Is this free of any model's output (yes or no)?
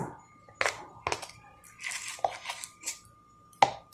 yes